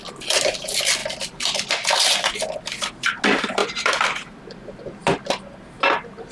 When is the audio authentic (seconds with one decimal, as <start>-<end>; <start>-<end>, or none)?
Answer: 0.0-3.6; 4.8-6.3